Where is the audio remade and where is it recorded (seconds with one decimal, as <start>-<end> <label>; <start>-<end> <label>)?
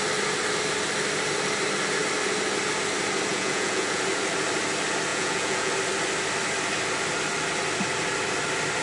0.0-3.3 recorded; 3.3-4.0 remade; 4.0-5.1 recorded; 5.1-5.7 remade; 5.7-8.8 recorded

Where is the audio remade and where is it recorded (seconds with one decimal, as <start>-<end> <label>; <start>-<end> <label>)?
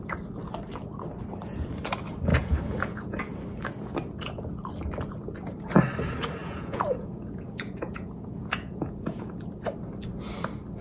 0.0-2.3 recorded; 2.3-3.2 remade; 3.2-6.4 recorded; 6.4-9.4 remade; 9.4-10.8 recorded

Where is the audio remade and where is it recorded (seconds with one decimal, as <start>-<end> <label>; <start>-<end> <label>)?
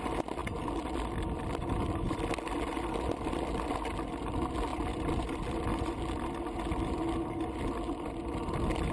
0.0-8.9 recorded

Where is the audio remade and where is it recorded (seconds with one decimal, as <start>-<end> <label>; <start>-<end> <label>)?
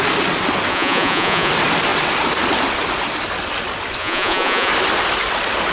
0.0-0.7 recorded; 0.7-1.5 remade; 1.5-4.0 recorded; 4.0-4.7 remade; 4.7-5.7 recorded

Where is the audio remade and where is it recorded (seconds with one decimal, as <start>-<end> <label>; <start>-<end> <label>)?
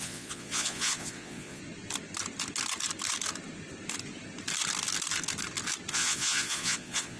0.0-1.6 remade; 1.6-5.9 recorded; 5.9-7.2 remade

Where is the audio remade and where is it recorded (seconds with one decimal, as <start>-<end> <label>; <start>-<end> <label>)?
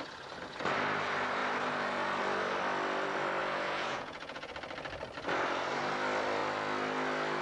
0.0-3.4 recorded; 3.4-4.5 remade; 4.5-7.4 recorded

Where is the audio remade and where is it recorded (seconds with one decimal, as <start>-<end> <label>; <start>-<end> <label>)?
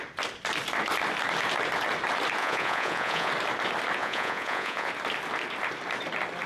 0.0-2.4 recorded; 2.4-3.3 remade; 3.3-4.0 recorded; 4.0-4.9 remade; 4.9-6.5 recorded